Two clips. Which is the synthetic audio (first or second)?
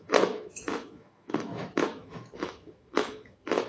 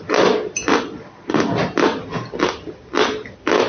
first